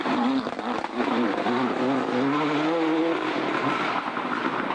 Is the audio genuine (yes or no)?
yes